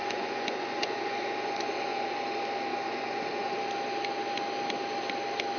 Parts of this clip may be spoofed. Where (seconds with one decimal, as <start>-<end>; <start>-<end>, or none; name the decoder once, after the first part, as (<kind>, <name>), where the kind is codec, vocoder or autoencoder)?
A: 0.0-2.2 (vocoder, Vocos); 2.7-3.5